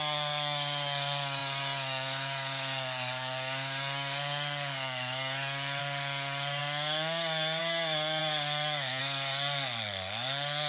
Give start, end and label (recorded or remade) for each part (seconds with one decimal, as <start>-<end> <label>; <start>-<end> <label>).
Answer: 0.0-10.7 remade